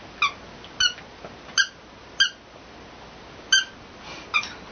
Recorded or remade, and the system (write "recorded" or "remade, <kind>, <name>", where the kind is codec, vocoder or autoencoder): recorded